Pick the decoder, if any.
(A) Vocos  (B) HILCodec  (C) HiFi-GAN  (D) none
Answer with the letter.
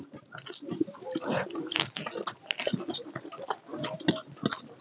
D